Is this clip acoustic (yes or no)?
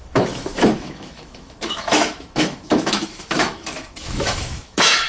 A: no